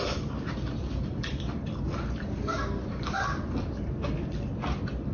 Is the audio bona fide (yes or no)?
no